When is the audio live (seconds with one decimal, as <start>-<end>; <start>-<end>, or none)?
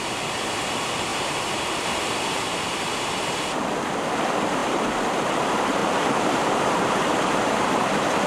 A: 0.0-1.1; 2.8-5.8